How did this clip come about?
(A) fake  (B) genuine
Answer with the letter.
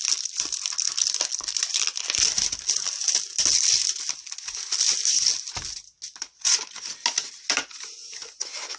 B